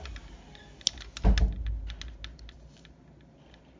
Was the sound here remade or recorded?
recorded